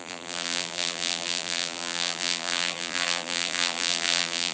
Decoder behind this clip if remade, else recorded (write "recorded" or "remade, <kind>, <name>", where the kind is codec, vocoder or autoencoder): remade, vocoder, BigVGAN v2